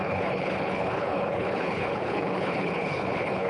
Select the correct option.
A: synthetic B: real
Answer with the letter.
A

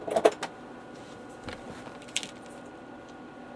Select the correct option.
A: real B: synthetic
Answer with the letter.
A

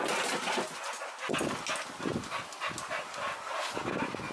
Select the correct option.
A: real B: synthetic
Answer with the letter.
A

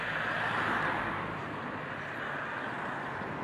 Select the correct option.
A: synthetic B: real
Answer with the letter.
B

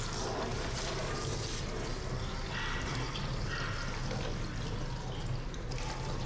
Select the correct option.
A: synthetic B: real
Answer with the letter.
B